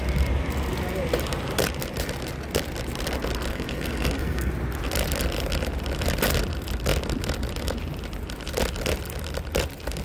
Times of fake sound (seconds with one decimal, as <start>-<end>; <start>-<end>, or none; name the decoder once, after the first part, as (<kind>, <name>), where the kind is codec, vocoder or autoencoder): 3.5-4.5 (codec, SNAC)